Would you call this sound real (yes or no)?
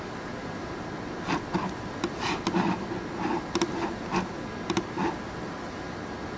yes